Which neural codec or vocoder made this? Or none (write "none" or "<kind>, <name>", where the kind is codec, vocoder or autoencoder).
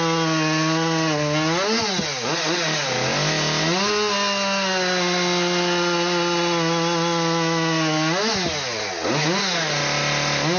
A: none